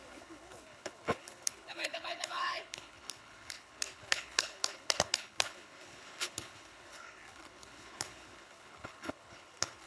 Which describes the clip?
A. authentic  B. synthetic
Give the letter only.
B